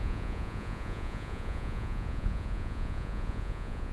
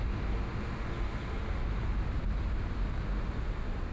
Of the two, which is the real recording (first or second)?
second